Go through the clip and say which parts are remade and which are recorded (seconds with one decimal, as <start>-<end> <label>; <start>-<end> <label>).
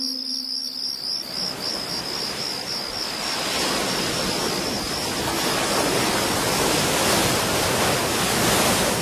0.0-9.0 recorded